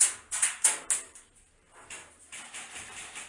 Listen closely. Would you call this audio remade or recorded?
recorded